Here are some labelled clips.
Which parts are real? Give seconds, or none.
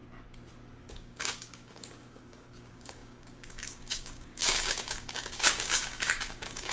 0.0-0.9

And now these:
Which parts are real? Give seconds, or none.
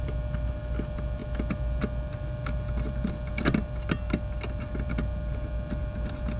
0.0-6.4